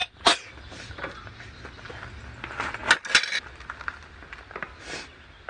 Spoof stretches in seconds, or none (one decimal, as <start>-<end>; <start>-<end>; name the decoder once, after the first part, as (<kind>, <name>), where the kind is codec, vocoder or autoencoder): none